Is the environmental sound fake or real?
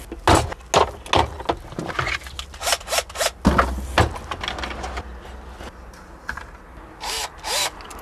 real